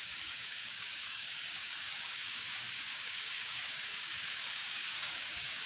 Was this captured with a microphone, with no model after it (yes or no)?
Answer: no